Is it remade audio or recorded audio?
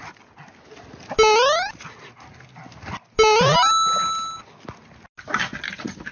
recorded